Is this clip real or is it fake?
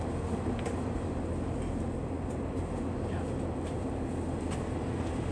real